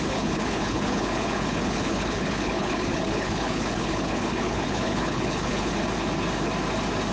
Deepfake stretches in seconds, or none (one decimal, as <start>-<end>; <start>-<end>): 0.0-5.7